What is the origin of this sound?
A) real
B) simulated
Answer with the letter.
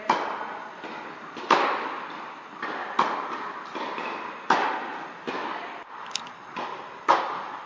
A